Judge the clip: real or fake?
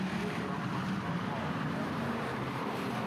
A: fake